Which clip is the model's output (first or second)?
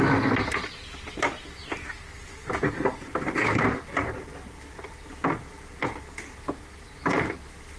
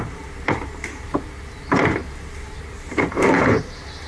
second